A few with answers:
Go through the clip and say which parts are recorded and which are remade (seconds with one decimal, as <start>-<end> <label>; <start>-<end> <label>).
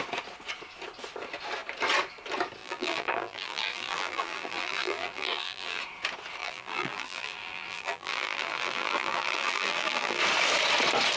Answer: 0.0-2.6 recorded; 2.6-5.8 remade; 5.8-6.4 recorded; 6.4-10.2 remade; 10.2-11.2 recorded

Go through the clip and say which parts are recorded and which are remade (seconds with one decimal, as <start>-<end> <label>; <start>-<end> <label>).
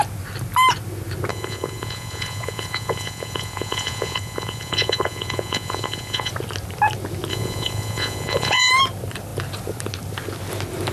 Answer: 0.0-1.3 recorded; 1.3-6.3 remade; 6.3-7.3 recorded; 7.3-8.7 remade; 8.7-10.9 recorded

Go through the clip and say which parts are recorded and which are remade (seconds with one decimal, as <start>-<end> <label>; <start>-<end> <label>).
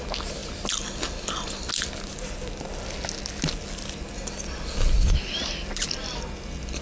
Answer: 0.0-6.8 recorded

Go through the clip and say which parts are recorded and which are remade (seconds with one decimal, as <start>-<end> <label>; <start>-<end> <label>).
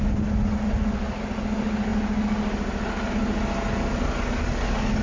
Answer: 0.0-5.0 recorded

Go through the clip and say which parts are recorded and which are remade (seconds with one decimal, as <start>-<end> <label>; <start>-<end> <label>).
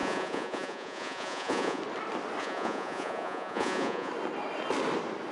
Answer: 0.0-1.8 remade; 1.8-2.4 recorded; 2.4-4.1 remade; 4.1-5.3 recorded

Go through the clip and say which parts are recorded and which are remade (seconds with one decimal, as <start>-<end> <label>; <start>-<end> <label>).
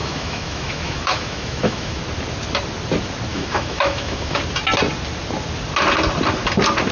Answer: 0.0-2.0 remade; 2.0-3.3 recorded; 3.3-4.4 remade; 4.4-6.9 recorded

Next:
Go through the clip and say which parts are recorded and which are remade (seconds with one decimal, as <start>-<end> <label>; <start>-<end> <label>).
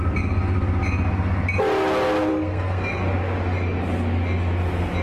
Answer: 0.0-2.3 recorded; 2.3-2.9 remade; 2.9-5.0 recorded